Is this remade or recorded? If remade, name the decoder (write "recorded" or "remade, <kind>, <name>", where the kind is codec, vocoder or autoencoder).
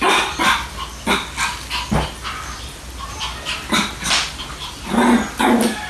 recorded